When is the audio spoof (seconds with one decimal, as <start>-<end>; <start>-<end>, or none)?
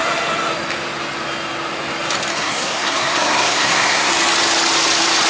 2.3-4.1